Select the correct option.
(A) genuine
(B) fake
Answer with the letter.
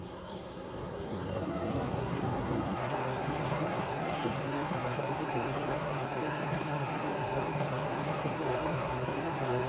B